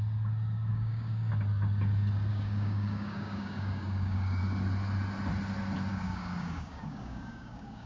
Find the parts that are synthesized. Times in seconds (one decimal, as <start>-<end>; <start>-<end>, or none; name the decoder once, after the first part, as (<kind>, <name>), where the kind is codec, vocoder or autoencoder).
0.7-1.3 (codec, DAC); 2.3-4.4; 5.9-7.9